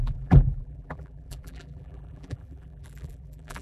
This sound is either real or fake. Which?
fake